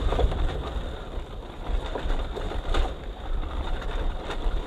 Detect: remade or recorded remade